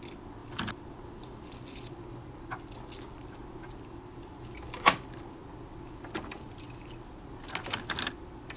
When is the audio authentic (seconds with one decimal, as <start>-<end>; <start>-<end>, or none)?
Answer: 0.0-8.6